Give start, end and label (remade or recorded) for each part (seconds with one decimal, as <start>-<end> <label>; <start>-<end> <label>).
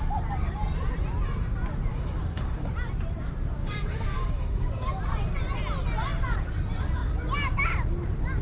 0.0-1.9 recorded; 1.9-2.7 remade; 2.7-3.6 recorded; 3.6-4.9 remade; 4.9-8.4 recorded